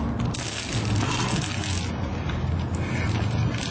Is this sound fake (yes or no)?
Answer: no